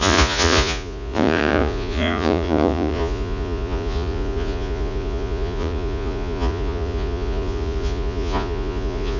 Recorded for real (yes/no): no